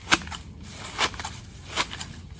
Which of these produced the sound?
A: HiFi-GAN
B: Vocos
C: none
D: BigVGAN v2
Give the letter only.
C